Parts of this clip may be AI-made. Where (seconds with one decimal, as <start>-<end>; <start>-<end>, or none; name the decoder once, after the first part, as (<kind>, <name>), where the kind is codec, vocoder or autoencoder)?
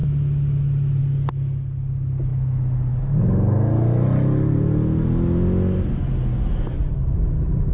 none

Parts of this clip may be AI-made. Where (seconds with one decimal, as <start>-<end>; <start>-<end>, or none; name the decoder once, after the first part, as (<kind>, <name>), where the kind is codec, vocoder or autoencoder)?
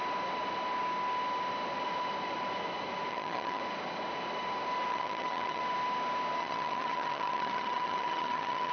3.1-3.6 (vocoder, HiFi-GAN); 4.9-5.6; 6.4-8.7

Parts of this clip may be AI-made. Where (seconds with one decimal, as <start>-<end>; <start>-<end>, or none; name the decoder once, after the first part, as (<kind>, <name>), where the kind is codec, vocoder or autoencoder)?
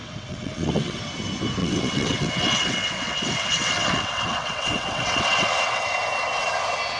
0.0-1.0 (vocoder, WaveNeXt); 1.6-5.8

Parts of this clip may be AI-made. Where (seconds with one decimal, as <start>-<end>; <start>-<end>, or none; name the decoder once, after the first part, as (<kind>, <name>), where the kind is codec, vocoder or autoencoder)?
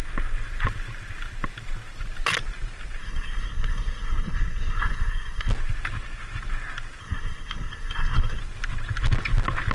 3.0-5.5 (codec, SNAC); 7.0-8.4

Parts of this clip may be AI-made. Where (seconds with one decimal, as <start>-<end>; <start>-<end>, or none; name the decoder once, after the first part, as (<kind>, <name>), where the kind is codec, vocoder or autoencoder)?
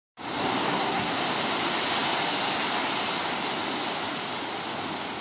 0.7-1.2 (codec, SNAC)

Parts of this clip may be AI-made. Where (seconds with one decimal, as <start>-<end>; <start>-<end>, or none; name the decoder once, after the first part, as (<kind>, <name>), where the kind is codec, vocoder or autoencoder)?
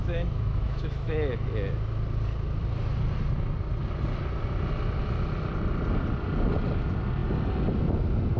0.0-1.3 (autoencoder, DAC-VAE)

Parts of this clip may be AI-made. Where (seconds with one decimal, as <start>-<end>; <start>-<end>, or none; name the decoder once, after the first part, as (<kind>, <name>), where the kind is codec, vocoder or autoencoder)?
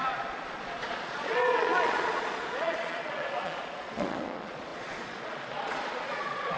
0.0-6.6 (vocoder, Vocos)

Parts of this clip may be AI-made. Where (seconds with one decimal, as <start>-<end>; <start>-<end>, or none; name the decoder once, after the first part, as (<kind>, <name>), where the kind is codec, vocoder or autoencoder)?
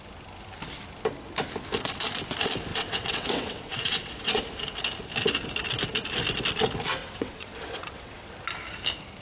2.7-4.4 (vocoder, WaveNeXt); 7.0-8.3